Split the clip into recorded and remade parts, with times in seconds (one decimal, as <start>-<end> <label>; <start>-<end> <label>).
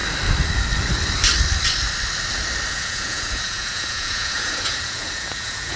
0.0-2.7 recorded; 2.7-5.8 remade